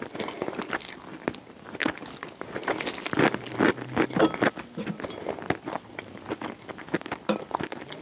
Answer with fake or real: real